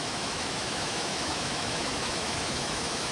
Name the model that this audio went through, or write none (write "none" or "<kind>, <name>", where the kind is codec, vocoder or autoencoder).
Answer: autoencoder, DAC-VAE